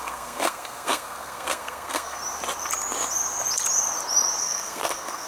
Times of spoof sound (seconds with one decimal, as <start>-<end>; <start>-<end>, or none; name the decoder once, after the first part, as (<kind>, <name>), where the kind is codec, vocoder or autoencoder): 0.0-2.2 (codec, SNAC); 4.4-5.3